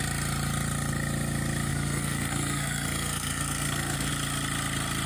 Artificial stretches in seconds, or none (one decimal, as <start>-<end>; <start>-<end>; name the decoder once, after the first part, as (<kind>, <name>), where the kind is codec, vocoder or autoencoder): 1.7-4.1 (codec, SNAC)